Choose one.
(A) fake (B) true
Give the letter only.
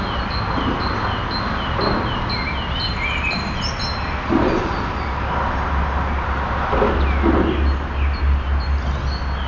B